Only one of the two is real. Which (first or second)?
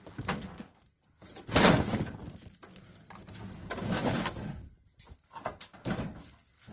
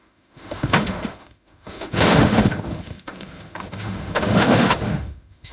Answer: first